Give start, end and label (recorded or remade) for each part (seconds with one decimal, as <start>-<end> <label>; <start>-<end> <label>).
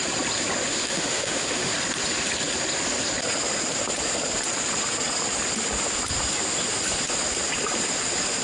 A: 0.0-0.7 recorded; 0.7-1.7 remade; 1.7-8.4 recorded